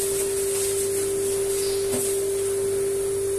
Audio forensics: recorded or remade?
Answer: recorded